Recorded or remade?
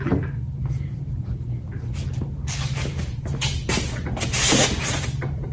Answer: recorded